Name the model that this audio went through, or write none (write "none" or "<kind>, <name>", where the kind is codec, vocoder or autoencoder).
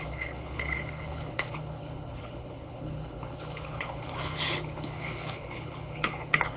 codec, HILCodec